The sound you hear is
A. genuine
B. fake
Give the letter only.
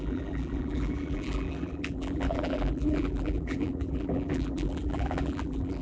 B